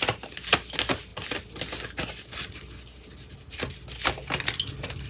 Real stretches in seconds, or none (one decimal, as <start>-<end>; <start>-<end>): 0.0-5.1